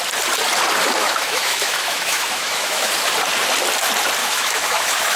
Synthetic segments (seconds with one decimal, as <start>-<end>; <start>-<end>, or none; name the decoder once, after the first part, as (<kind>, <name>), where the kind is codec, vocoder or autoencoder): 1.0-2.9 (autoencoder, DAC-VAE); 4.2-5.2